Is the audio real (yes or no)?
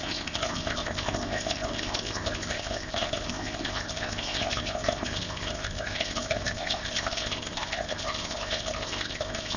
no